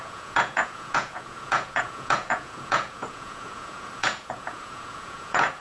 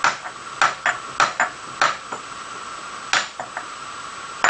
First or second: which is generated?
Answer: first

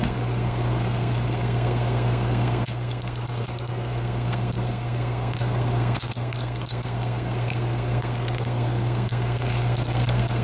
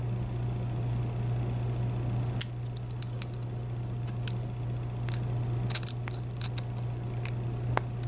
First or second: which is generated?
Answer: first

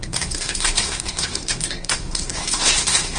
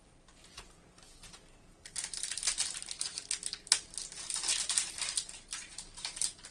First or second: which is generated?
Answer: first